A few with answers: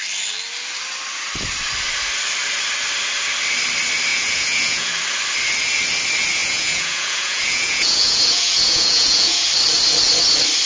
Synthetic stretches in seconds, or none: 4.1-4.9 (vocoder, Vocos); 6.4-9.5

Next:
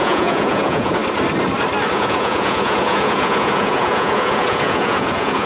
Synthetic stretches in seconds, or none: 0.0-1.0 (vocoder, Vocos); 1.9-5.5

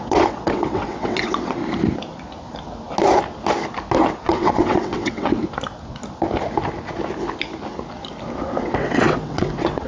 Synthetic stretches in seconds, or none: 0.0-1.6 (vocoder, WaveNeXt); 4.1-5.4; 8.6-9.9